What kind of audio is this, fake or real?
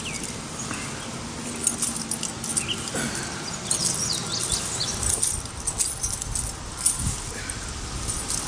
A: real